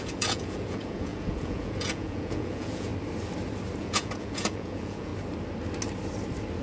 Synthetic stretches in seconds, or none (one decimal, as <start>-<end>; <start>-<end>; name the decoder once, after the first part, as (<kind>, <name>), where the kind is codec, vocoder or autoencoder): 0.0-2.9 (vocoder, Vocos); 3.8-5.1